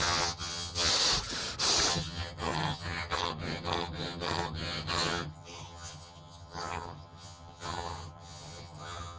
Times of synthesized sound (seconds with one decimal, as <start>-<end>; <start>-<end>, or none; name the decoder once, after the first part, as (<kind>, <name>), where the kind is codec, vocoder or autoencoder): 0.0-0.9 (vocoder, HiFi-GAN); 1.9-9.2